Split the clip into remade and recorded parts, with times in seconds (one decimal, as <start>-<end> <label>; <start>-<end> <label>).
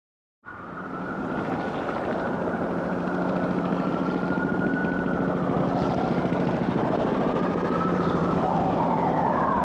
0.0-4.8 remade; 4.8-5.6 recorded; 5.6-9.6 remade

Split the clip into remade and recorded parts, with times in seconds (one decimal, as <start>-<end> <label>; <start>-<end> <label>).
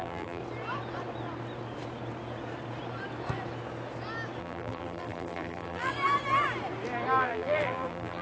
0.0-0.4 remade; 0.4-4.4 recorded; 4.4-5.9 remade; 5.9-7.2 recorded; 7.2-8.2 remade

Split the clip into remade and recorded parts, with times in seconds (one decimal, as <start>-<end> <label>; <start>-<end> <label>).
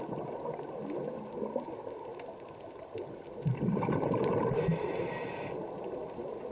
0.0-2.1 recorded; 2.1-4.9 remade; 4.9-6.5 recorded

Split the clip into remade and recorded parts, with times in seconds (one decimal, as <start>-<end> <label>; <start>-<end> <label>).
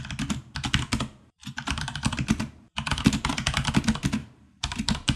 0.0-1.4 recorded; 1.4-3.7 remade; 3.7-4.2 recorded; 4.2-5.2 remade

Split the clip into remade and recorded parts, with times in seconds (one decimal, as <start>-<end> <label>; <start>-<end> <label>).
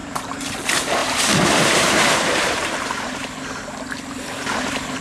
0.0-0.6 remade; 0.6-1.0 recorded; 1.0-3.6 remade; 3.6-5.0 recorded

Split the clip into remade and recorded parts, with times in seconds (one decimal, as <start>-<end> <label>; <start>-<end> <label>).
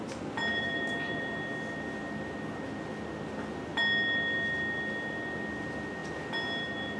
0.0-0.5 recorded; 0.5-1.3 remade; 1.3-7.0 recorded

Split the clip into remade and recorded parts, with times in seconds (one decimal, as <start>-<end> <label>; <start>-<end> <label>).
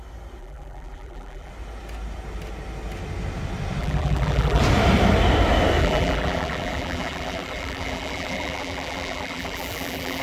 0.0-0.4 recorded; 0.4-1.5 remade; 1.5-3.8 recorded; 3.8-4.6 remade; 4.6-5.8 recorded; 5.8-10.2 remade